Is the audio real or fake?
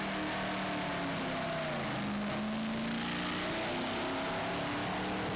real